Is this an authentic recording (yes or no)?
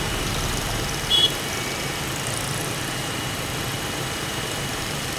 no